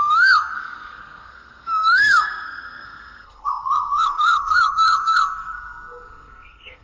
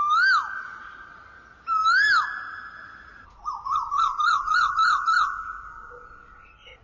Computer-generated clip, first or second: first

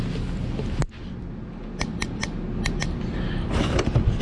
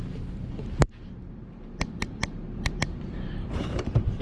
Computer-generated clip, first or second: second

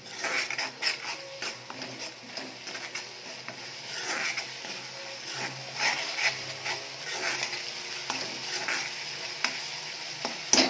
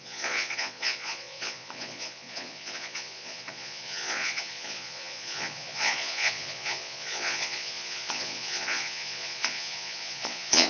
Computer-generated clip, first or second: second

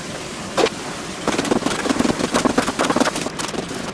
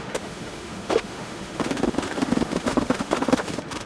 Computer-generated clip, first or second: second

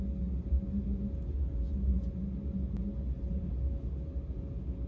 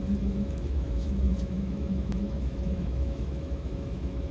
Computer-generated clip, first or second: second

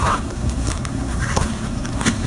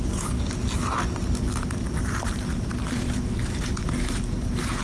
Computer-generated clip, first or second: first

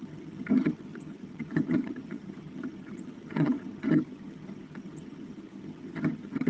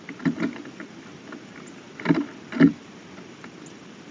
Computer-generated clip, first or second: first